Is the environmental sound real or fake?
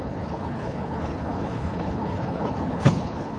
fake